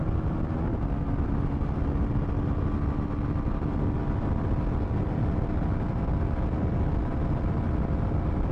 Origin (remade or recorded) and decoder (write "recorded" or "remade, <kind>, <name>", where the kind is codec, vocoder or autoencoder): recorded